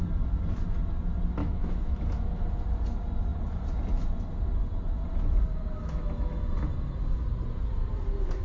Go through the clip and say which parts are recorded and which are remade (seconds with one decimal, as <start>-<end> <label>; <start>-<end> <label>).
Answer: 0.0-1.4 recorded; 1.4-2.4 remade; 2.4-5.5 recorded; 5.5-6.3 remade; 6.3-8.4 recorded